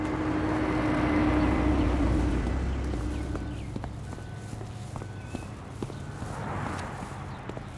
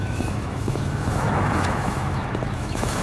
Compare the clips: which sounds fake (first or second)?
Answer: second